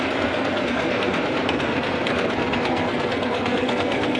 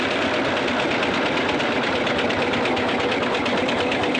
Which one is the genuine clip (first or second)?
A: second